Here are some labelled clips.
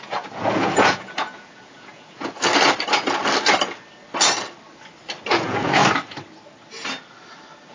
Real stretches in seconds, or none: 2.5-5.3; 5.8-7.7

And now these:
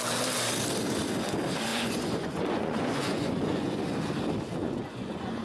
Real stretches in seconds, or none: 0.0-1.7; 3.8-4.6